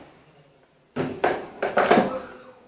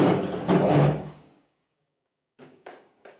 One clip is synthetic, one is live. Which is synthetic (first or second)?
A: second